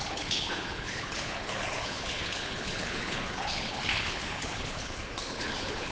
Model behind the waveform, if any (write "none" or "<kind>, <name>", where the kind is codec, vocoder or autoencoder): codec, HILCodec